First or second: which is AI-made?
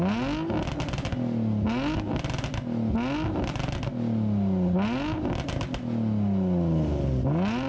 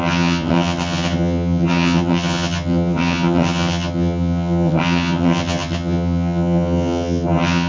second